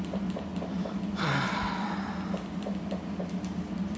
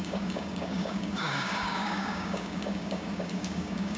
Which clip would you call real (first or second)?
first